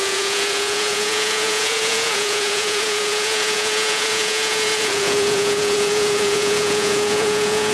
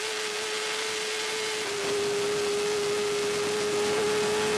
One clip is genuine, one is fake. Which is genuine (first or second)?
second